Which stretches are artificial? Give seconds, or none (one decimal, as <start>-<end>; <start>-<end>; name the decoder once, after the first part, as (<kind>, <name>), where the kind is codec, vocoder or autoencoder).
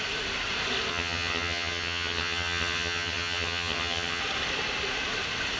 0.9-4.2 (vocoder, HiFi-GAN)